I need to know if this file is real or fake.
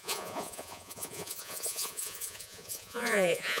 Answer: fake